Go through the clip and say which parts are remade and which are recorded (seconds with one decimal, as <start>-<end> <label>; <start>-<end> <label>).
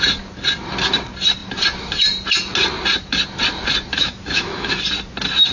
0.0-3.9 recorded; 3.9-4.8 remade; 4.8-5.5 recorded